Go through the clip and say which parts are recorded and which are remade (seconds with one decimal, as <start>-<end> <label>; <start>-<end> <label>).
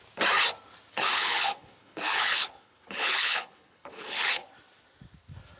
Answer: 0.0-0.9 recorded; 0.9-4.3 remade; 4.3-5.6 recorded